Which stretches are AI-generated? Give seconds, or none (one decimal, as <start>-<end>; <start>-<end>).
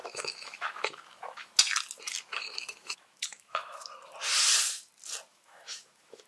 0.0-1.5; 2.3-3.9; 5.3-6.3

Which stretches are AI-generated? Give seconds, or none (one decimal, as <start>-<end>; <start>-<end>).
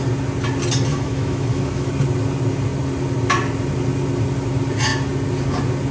0.9-1.9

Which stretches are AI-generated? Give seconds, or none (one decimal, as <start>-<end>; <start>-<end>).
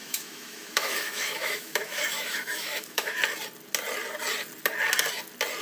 0.0-3.2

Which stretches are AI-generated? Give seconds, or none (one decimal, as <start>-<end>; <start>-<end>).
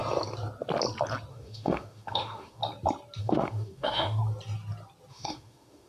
1.3-2.6; 3.2-4.2; 5.1-5.9